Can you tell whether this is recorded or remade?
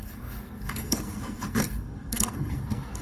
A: remade